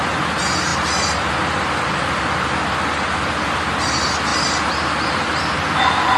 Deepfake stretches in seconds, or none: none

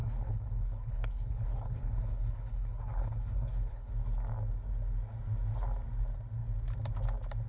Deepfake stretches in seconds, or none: 0.0-3.9 (codec, HILCodec)

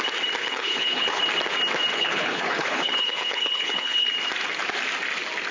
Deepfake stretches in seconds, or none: 0.4-1.2 (codec, HILCodec); 1.9-4.1

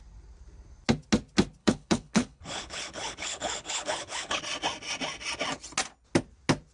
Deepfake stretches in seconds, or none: 1.6-4.4 (codec, HILCodec)

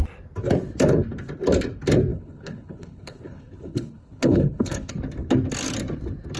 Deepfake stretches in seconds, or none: 2.1-4.9 (codec, HILCodec)